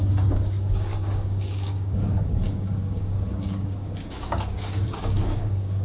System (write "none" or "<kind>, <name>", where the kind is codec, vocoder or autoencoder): codec, DAC